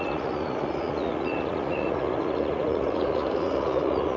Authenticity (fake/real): fake